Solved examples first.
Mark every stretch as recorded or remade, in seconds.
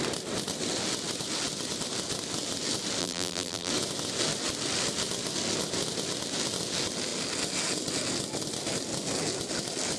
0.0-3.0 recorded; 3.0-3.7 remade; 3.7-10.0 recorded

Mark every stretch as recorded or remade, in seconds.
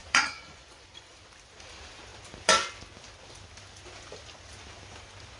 0.0-1.1 remade; 1.1-5.4 recorded